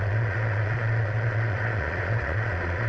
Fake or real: fake